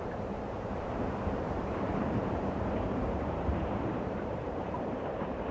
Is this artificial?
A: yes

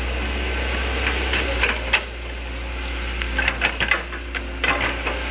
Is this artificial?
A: no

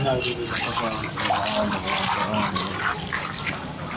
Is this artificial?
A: no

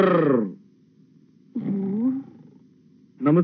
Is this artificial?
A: no